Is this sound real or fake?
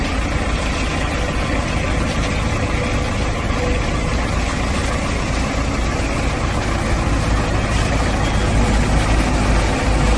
real